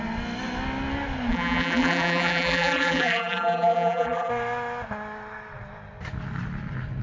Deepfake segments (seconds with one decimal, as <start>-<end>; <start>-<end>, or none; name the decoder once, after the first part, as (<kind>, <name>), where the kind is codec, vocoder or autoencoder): 1.3-4.3 (vocoder, BigVGAN v2)